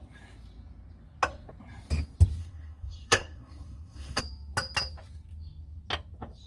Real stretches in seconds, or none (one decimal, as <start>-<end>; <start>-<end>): 0.0-2.4; 4.2-6.5